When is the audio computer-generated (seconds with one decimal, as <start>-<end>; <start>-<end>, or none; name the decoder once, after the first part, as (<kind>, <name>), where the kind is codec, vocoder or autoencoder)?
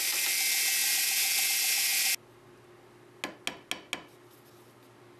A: none